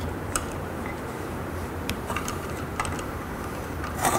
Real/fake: fake